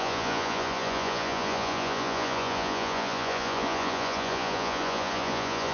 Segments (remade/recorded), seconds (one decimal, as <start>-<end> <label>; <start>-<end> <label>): 0.0-5.7 remade